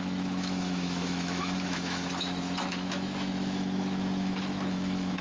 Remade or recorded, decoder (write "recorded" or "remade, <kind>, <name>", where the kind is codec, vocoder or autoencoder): remade, autoencoder, DAC-VAE